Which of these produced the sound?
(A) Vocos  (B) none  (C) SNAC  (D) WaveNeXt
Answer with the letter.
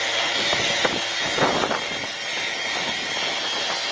B